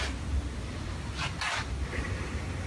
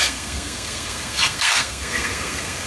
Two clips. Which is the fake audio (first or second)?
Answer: second